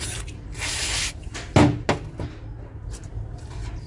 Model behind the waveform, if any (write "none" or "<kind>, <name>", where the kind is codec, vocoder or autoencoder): none